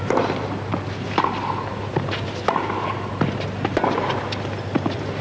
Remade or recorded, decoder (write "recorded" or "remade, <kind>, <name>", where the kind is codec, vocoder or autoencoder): recorded